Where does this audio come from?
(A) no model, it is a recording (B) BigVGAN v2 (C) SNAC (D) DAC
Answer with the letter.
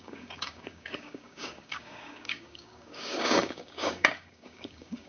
D